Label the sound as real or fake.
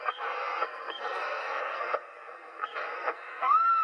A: fake